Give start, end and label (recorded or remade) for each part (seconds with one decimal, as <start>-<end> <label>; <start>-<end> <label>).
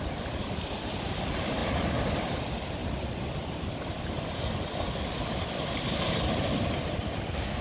0.0-7.6 recorded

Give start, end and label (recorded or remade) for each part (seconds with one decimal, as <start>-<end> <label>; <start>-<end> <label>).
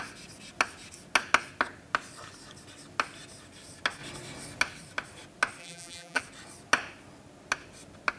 0.0-5.6 recorded; 5.6-6.2 remade; 6.2-8.2 recorded